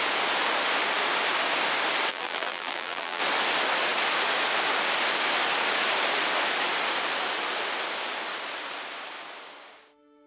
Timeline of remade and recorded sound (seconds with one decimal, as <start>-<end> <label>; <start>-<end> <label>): 0.0-2.1 recorded; 2.1-3.2 remade; 3.2-10.3 recorded